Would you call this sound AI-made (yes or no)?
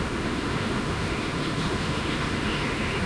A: yes